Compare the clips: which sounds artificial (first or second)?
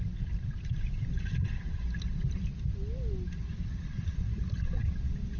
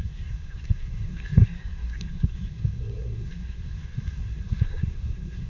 second